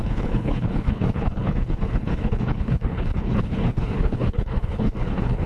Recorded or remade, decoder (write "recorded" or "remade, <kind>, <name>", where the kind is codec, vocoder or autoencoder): remade, codec, HILCodec